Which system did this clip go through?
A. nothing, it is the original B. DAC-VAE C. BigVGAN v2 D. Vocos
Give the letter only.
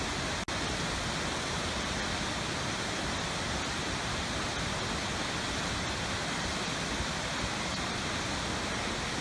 A